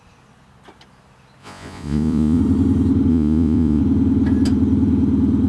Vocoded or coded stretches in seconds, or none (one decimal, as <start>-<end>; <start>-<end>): 1.4-2.4; 3.1-3.8